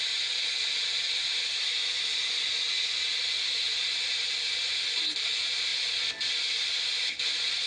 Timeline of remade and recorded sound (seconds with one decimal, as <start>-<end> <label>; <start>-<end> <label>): 0.0-1.7 remade; 1.7-4.1 recorded; 4.1-5.7 remade; 5.7-6.4 recorded; 6.4-7.7 remade